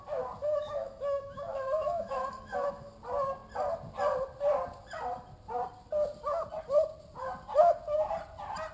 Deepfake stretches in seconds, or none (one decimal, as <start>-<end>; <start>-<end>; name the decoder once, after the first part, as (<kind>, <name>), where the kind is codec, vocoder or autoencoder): 0.4-2.9 (autoencoder, DAC-VAE)